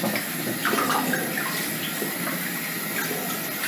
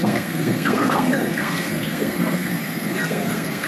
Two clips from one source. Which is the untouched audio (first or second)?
first